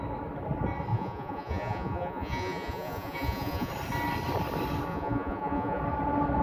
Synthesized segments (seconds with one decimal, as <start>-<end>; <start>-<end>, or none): 0.9-3.7; 4.9-5.8

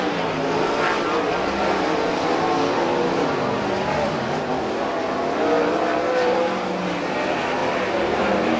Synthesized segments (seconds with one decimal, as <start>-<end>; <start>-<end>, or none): none

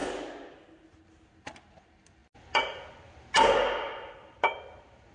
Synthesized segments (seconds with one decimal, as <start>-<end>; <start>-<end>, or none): none

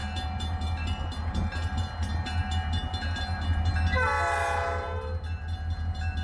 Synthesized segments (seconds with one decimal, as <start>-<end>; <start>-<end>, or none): none

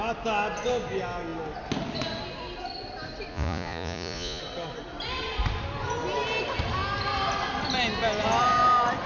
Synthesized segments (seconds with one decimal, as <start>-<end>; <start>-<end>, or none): 3.3-4.4

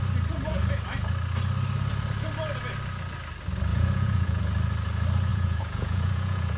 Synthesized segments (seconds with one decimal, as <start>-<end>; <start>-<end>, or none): 3.7-4.4; 5.3-6.6